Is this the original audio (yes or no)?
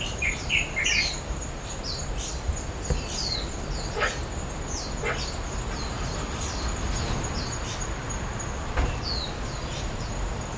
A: yes